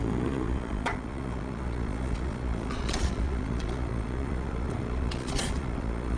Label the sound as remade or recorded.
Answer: remade